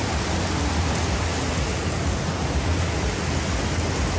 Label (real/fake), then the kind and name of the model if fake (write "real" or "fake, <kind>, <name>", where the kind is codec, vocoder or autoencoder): real